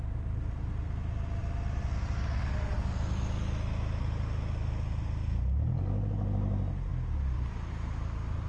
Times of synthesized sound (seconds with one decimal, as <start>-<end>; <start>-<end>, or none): none